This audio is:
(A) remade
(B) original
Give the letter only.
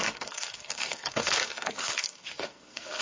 A